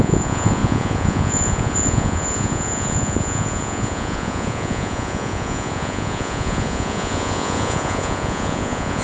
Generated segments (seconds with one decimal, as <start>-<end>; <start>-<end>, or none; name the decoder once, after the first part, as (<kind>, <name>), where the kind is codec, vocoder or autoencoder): 0.0-9.0 (vocoder, Vocos)